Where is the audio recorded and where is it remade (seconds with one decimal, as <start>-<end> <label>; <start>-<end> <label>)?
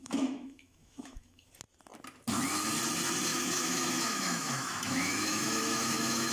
0.0-1.5 remade; 1.5-3.3 recorded; 3.3-6.3 remade